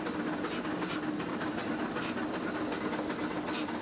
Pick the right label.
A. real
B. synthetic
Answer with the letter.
A